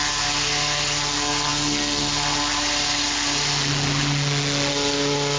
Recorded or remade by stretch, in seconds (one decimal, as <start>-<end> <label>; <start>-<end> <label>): 0.0-5.4 recorded